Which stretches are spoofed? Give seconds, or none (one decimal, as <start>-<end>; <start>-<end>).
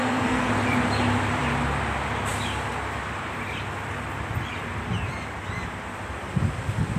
0.0-0.5